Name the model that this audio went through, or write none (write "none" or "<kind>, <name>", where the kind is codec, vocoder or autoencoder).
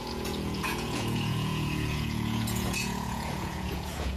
vocoder, Vocos